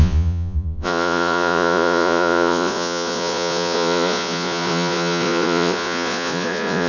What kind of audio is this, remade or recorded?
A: remade